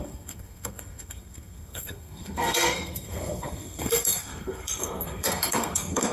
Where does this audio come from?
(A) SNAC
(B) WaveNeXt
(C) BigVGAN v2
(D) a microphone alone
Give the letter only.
A